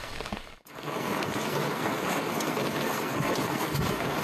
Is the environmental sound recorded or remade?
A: remade